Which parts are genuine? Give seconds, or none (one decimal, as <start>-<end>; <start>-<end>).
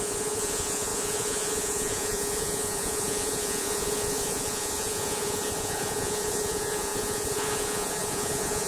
none